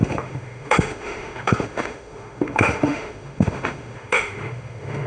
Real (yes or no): no